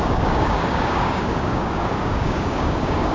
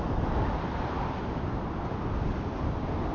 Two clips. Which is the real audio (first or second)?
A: second